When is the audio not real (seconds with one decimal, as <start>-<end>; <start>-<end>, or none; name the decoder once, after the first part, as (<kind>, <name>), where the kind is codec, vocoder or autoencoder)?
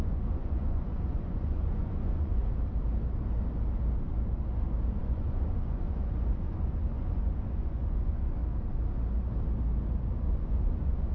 0.0-2.4 (vocoder, Vocos); 5.0-8.4; 10.2-11.1